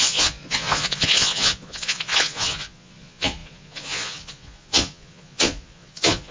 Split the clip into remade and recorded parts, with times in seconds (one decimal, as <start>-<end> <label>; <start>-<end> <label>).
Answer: 0.0-6.3 remade